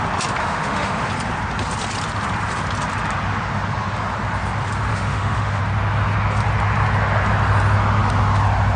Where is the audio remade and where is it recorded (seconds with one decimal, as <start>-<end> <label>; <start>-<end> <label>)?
0.0-0.4 recorded; 0.4-1.1 remade; 1.1-4.9 recorded; 4.9-5.6 remade; 5.6-8.8 recorded